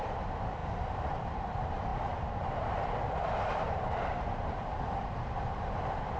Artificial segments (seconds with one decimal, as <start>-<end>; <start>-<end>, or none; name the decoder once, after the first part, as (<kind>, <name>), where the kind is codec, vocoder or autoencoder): 0.0-6.2 (vocoder, BigVGAN v2)